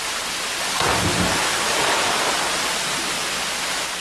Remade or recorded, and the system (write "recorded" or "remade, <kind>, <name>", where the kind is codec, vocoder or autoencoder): recorded